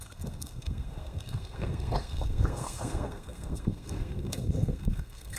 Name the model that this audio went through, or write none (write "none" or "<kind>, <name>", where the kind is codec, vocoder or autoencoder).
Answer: codec, SNAC